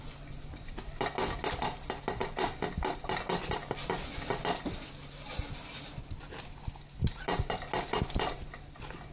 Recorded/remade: recorded